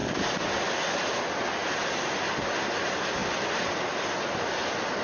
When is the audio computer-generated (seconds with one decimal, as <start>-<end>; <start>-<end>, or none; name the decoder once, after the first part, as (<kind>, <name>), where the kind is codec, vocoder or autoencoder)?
none